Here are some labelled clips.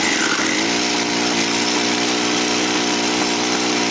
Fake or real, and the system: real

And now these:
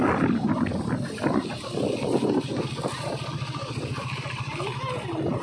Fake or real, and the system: real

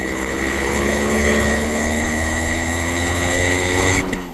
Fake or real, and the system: fake, codec, HILCodec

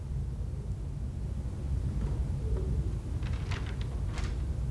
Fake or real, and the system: real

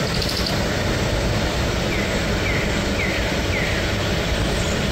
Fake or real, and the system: real